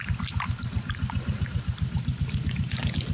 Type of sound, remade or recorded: recorded